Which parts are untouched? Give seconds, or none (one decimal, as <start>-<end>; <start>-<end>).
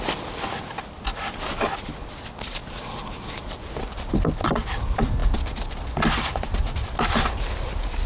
0.0-8.1